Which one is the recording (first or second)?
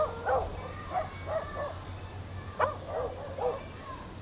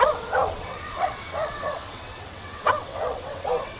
first